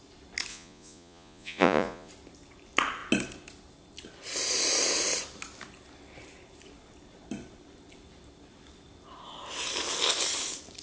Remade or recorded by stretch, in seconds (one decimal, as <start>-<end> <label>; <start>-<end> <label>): 0.0-0.5 recorded; 0.5-2.1 remade; 2.1-10.8 recorded